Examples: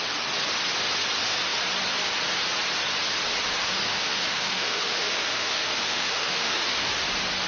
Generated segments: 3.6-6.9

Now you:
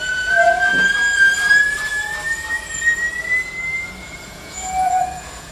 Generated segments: 0.0-0.7; 4.0-5.5

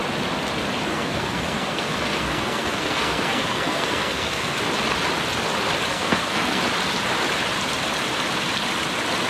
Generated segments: 0.9-4.6; 5.9-6.6

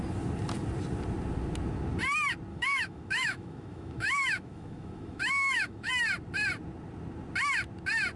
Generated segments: 2.5-5.9

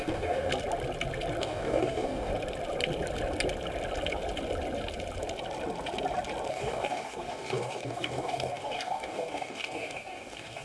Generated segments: 0.0-0.5; 1.4-2.3; 6.5-10.6